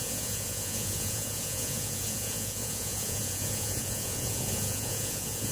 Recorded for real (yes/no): no